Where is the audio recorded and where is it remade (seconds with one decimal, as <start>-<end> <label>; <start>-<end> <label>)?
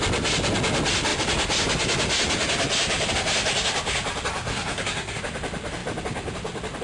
0.0-4.5 recorded; 4.5-5.2 remade; 5.2-6.8 recorded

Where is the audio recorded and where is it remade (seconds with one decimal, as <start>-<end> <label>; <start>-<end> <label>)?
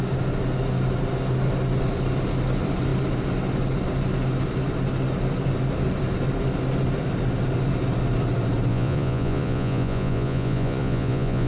0.0-8.7 recorded; 8.7-11.5 remade